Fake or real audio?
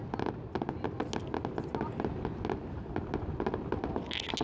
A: real